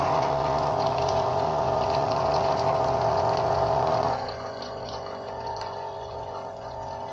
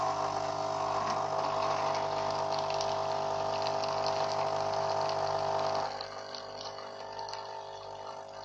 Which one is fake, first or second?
first